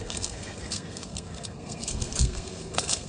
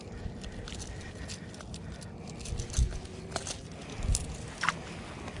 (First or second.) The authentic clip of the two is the second